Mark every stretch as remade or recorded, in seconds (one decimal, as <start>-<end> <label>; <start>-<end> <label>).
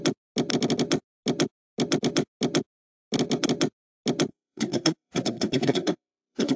0.0-4.3 recorded; 4.3-6.6 remade